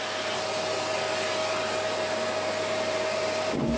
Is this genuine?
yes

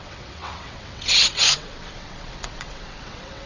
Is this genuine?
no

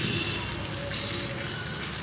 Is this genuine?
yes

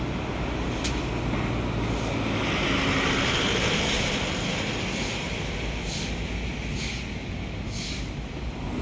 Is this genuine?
yes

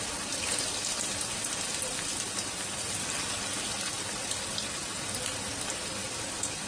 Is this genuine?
yes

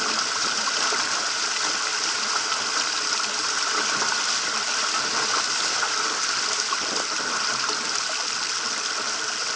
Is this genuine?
yes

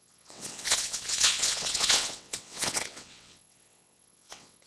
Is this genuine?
no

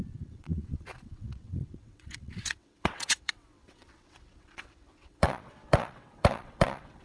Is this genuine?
no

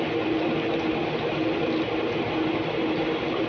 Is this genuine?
yes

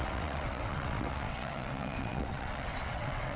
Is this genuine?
no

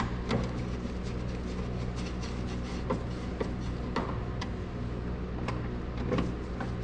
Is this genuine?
yes